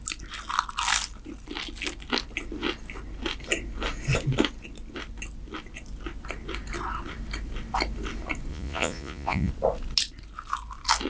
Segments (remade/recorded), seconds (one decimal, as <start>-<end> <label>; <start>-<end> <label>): 0.0-8.5 recorded; 8.5-9.5 remade; 9.5-11.1 recorded